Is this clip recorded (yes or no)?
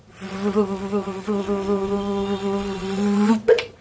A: no